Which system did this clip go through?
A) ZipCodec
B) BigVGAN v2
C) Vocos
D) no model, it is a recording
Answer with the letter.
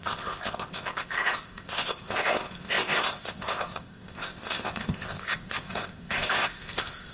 A